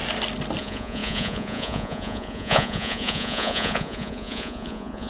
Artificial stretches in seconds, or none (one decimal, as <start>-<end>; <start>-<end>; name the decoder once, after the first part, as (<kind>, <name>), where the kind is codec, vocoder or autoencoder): 0.6-5.1 (vocoder, Vocos)